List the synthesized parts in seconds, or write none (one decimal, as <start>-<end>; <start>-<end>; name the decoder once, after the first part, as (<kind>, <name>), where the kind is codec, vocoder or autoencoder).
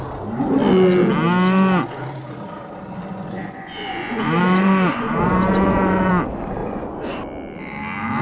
3.1-6.1 (vocoder, Vocos); 6.6-7.2